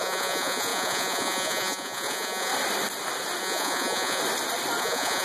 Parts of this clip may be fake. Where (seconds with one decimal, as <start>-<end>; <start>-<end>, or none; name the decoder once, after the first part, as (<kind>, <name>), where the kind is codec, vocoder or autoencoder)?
0.0-2.5 (vocoder, Vocos); 3.4-4.2; 4.8-5.2